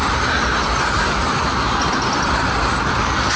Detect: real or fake real